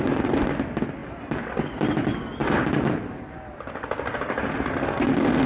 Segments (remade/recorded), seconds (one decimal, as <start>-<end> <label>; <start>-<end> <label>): 0.0-5.5 recorded